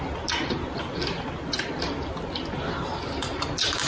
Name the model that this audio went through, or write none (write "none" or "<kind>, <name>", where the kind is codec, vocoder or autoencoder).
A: none